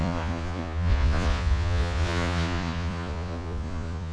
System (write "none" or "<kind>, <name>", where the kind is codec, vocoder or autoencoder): vocoder, Vocos